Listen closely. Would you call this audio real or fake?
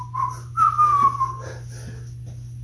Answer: real